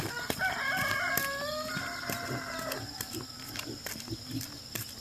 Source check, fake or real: real